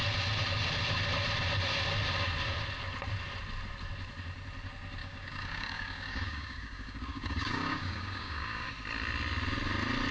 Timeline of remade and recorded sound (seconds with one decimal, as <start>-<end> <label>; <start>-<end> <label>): 0.0-5.0 recorded; 5.0-8.7 remade; 8.7-10.1 recorded